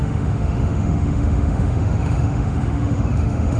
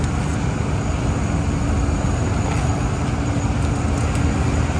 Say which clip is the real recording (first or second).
second